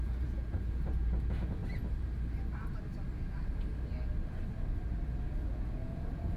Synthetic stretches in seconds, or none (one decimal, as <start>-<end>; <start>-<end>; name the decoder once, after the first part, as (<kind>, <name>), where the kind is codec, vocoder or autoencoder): 0.0-1.6 (vocoder, Vocos); 5.4-6.4